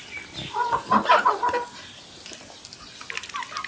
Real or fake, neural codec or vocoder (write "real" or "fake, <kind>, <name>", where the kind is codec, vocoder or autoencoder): real